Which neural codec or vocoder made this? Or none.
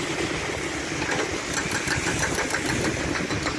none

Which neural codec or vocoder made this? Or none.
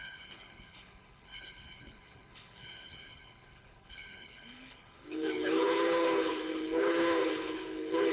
codec, HILCodec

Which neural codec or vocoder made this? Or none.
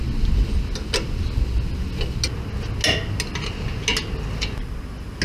none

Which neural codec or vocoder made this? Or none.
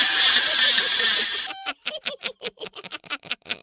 vocoder, BigVGAN v2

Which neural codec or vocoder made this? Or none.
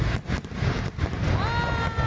none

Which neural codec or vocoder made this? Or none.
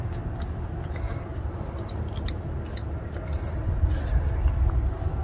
none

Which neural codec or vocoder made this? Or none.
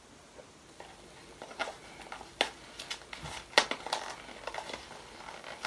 none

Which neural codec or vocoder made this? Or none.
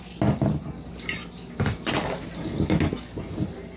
none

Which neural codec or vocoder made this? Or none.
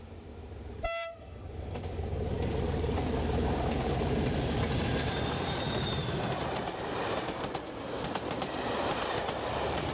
vocoder, BigVGAN v2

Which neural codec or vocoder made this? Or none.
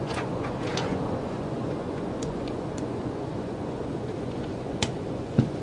vocoder, Vocos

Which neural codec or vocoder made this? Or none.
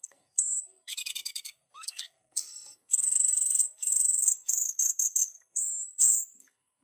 codec, SNAC